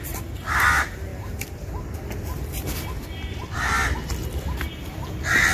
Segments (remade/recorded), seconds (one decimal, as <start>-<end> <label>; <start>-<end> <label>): 0.0-5.5 recorded